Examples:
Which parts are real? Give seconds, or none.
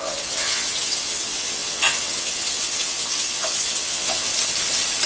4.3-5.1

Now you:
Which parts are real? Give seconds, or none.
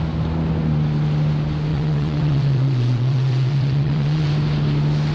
0.0-1.7; 4.3-5.1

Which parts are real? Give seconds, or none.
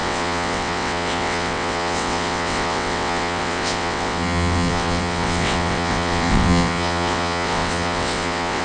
none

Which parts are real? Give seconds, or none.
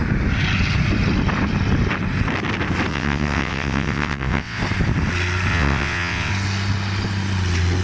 0.0-2.9; 4.6-5.5; 6.3-7.8